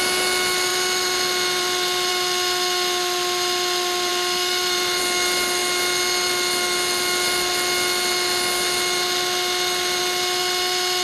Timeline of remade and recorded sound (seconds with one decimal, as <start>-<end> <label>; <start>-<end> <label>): 0.0-0.7 recorded; 0.7-2.1 remade; 2.1-4.1 recorded; 4.1-5.0 remade; 5.0-11.0 recorded